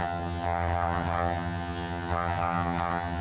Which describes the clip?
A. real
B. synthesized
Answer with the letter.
B